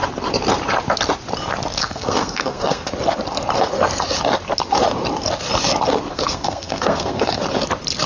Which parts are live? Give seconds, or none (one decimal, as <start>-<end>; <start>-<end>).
0.0-1.8; 2.9-6.1; 7.4-8.1